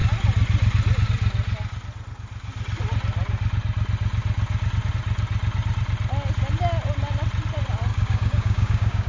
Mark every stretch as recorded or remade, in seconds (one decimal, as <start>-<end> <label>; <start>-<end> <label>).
0.0-7.9 recorded; 7.9-9.1 remade